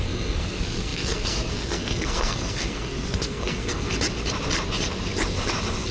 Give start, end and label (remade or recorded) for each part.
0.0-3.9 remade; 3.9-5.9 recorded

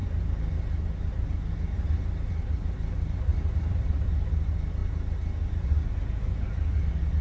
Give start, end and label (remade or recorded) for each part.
0.0-0.5 remade; 0.5-3.3 recorded; 3.3-4.2 remade; 4.2-7.2 recorded

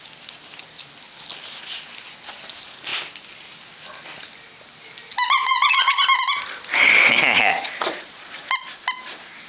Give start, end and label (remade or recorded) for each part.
0.0-5.5 recorded; 5.5-6.0 remade; 6.0-7.5 recorded; 7.5-8.5 remade; 8.5-9.5 recorded

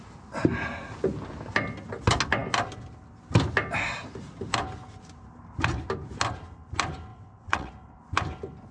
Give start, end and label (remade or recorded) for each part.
0.0-7.1 recorded; 7.1-7.7 remade; 7.7-8.7 recorded